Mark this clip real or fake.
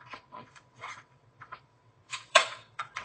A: fake